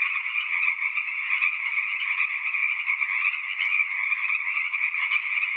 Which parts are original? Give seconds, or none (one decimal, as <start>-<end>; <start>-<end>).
2.6-4.5